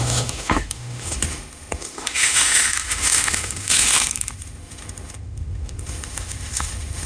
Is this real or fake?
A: fake